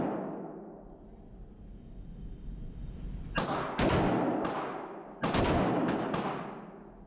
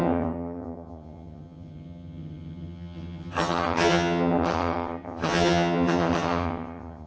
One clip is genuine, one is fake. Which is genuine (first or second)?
first